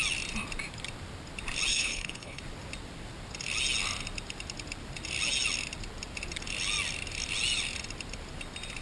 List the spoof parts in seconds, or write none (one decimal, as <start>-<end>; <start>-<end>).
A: 1.7-2.4